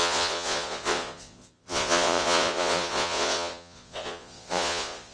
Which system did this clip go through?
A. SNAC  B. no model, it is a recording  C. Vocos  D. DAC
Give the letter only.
C